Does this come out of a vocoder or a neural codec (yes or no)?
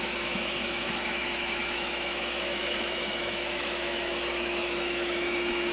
yes